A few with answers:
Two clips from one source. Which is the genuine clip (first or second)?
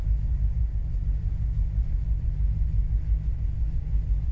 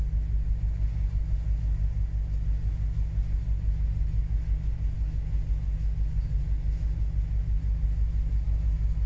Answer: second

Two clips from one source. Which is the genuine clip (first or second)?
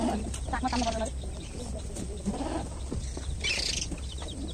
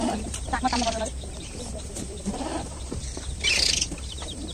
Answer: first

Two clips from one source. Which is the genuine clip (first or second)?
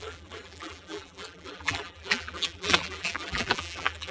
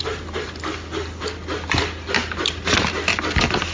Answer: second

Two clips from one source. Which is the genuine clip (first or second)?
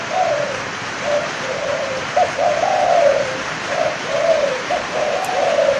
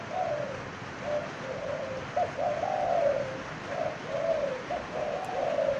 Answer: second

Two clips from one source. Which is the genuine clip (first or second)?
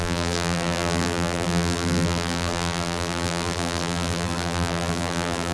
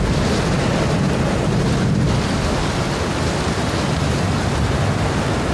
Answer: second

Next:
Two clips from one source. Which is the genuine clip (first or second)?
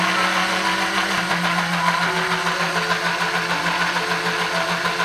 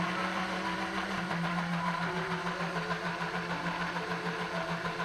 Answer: first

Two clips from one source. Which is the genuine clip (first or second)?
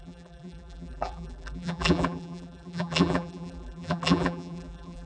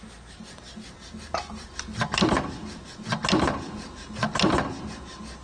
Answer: second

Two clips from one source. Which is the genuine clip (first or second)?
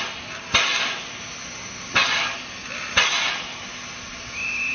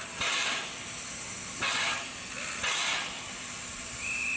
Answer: first